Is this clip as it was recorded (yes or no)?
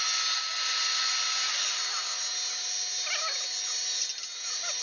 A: yes